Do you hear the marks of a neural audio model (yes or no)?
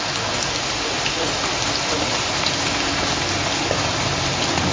no